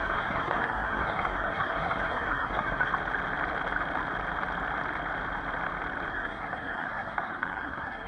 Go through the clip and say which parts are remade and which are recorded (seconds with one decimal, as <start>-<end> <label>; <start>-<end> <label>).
0.0-2.9 remade; 2.9-6.1 recorded; 6.1-8.1 remade